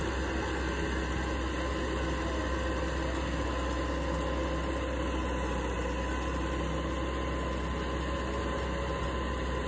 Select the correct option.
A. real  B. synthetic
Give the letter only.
A